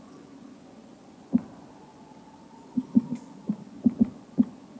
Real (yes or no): no